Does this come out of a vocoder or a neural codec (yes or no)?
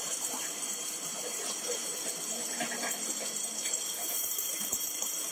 yes